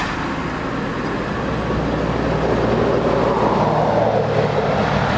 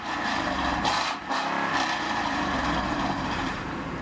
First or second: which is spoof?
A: second